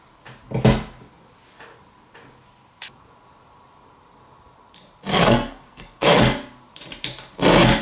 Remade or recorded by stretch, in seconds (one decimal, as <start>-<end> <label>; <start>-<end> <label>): 0.0-5.1 recorded; 5.1-6.2 remade; 6.2-7.8 recorded